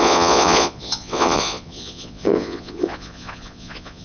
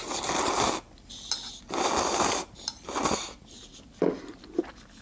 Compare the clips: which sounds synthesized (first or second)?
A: first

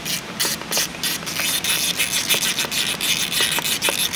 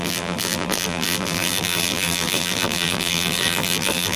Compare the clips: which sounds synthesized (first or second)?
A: second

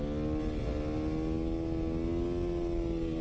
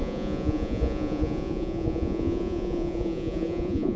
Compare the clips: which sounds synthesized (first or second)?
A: second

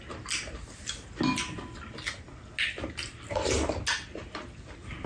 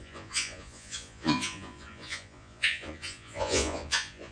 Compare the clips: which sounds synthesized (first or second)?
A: second